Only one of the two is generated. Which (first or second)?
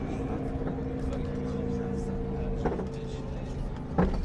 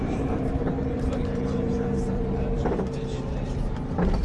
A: second